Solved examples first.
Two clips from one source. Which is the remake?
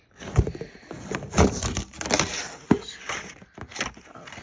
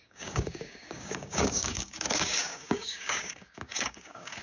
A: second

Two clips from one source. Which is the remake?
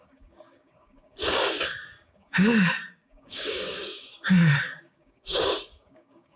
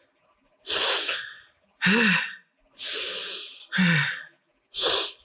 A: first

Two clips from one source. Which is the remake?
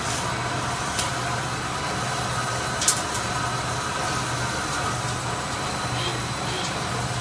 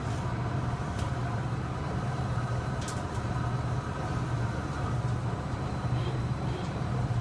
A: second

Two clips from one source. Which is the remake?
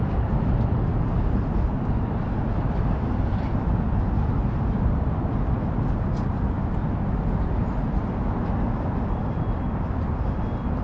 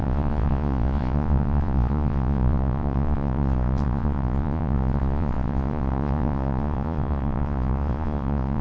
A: second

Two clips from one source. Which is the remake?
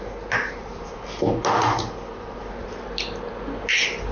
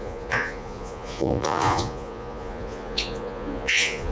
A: second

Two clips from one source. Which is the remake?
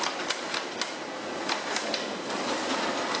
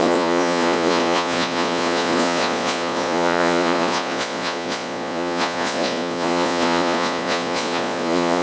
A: second